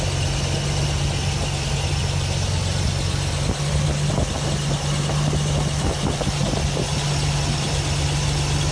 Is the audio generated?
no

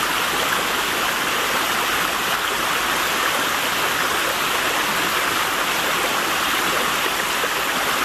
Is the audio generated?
no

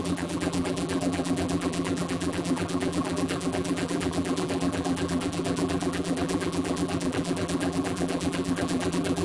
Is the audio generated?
yes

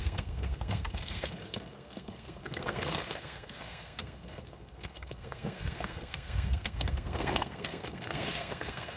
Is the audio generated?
yes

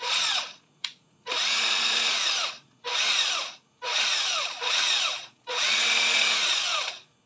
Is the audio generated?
yes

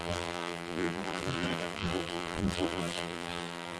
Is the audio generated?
yes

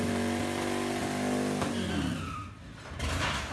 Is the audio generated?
no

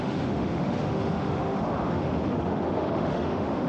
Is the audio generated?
yes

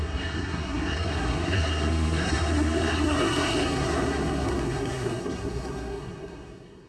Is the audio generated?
yes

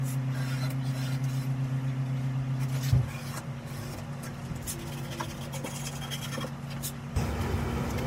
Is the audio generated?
no